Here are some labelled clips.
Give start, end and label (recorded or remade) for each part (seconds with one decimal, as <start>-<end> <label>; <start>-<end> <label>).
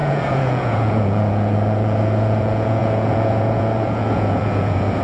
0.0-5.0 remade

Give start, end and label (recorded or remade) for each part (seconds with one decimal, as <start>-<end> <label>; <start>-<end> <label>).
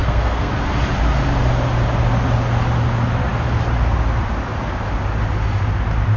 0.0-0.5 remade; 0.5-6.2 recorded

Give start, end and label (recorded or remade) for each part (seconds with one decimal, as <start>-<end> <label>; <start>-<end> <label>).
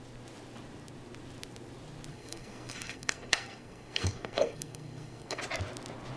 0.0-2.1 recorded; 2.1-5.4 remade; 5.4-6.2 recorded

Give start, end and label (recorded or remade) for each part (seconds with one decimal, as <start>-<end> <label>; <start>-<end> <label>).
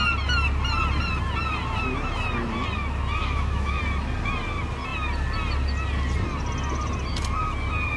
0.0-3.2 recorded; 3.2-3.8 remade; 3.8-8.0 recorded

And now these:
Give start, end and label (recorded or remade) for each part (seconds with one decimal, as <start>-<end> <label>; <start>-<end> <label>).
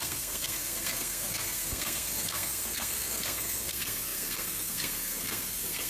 0.0-5.9 remade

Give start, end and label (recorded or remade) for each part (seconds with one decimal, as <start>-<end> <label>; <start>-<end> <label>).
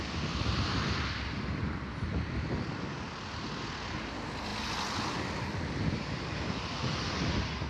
0.0-7.7 recorded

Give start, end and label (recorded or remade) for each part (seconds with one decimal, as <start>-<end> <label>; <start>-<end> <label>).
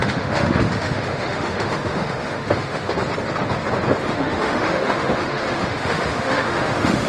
0.0-2.9 remade; 2.9-4.0 recorded; 4.0-7.1 remade